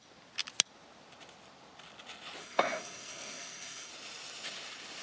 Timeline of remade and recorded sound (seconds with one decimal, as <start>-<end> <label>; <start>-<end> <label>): 0.0-2.4 recorded; 2.4-3.9 remade; 3.9-5.0 recorded